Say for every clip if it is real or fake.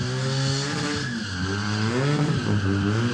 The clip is real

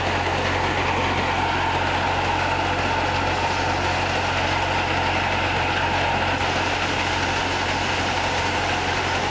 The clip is real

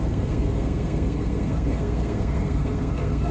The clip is fake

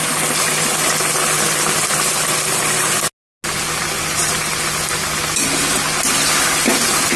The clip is real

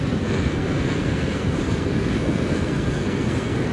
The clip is fake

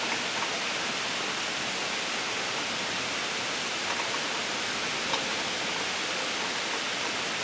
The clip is real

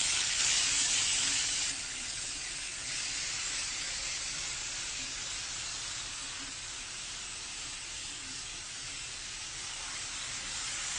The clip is fake